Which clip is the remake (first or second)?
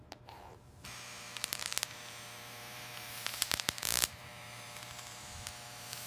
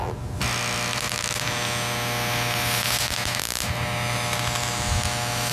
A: first